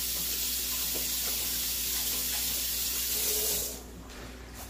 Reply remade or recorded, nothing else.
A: recorded